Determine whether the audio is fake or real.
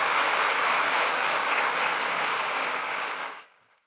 fake